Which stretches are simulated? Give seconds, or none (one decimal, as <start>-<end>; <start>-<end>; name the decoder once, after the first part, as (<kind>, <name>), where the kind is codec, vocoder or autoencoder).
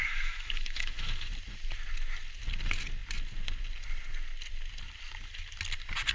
0.0-1.3 (autoencoder, DAC-VAE)